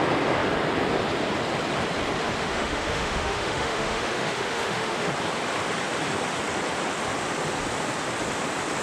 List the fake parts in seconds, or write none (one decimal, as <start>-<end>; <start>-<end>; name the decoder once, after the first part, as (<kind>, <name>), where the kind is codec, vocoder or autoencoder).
2.4-5.1 (autoencoder, DAC-VAE)